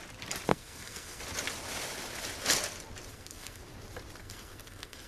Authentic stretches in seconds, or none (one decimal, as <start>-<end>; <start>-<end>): 0.0-0.5; 1.2-3.1; 3.6-4.2

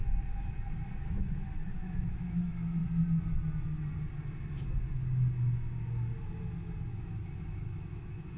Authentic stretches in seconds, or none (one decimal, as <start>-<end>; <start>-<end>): 0.0-1.0; 2.8-7.0

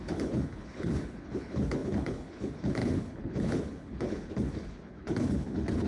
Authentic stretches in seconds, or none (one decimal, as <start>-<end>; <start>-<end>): none

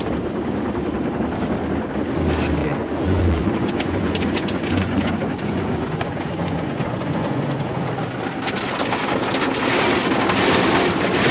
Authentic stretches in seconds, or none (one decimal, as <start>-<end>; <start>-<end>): 0.0-2.6; 7.9-11.3

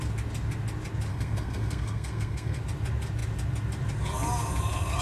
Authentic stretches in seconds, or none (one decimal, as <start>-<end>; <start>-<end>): 0.0-1.1; 2.6-5.0